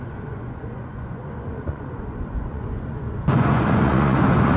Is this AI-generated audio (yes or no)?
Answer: yes